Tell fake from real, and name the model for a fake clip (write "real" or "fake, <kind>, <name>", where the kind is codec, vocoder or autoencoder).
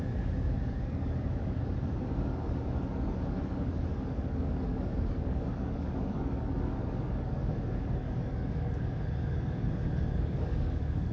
fake, codec, DAC